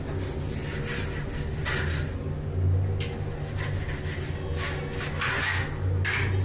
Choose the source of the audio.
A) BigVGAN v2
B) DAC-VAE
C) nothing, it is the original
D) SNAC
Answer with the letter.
C